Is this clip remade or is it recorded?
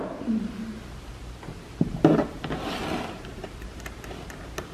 recorded